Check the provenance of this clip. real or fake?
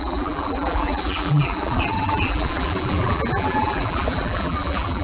fake